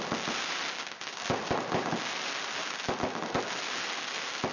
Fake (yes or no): no